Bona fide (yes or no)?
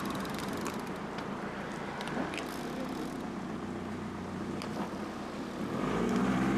no